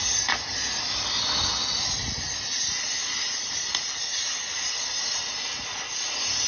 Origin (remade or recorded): recorded